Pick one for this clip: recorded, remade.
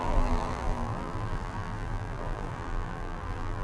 remade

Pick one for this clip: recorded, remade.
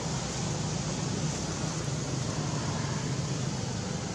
recorded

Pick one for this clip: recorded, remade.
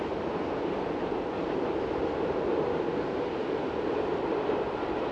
recorded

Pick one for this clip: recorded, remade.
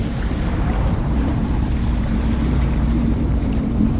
remade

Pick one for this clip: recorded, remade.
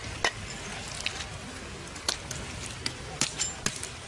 recorded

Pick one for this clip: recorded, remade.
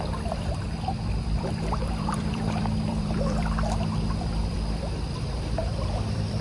remade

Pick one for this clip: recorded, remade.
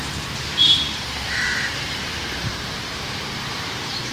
remade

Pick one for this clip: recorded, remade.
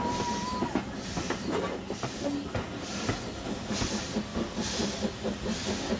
recorded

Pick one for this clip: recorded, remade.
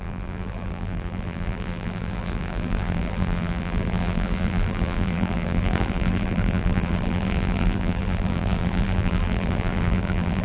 remade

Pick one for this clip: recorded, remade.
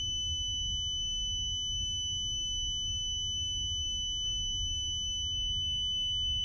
recorded